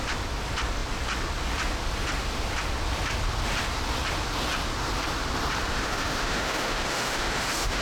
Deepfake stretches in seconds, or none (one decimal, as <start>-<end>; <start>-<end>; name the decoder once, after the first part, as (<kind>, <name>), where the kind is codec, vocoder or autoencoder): 5.7-7.8 (autoencoder, DAC-VAE)